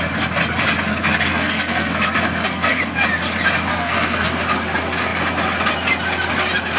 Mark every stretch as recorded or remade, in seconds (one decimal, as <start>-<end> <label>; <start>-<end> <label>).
0.0-0.9 recorded; 0.9-2.8 remade; 2.8-3.7 recorded; 3.7-4.3 remade; 4.3-6.8 recorded